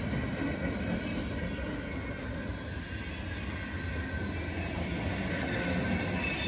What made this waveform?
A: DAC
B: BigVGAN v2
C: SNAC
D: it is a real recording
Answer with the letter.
D